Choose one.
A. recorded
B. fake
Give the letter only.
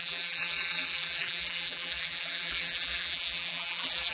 B